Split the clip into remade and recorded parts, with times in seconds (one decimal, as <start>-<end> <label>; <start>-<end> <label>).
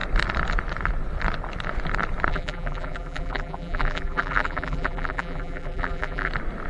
0.0-2.3 recorded; 2.3-6.3 remade; 6.3-6.7 recorded